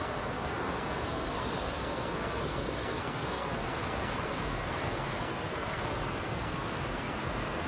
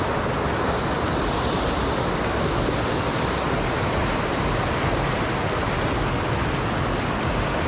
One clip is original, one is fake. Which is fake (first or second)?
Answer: first